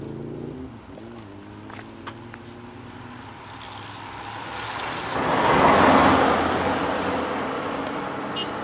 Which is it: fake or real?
real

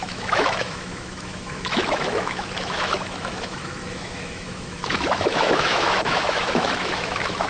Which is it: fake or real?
fake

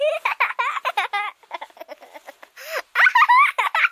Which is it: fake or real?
real